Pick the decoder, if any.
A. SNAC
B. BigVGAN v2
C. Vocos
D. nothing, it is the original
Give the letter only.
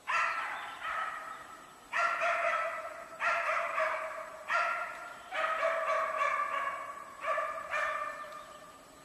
B